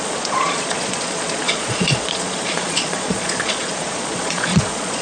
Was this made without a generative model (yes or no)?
no